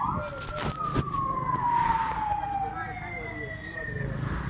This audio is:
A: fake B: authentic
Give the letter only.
B